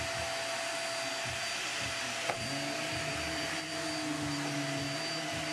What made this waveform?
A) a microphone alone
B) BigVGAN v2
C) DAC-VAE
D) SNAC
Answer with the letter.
A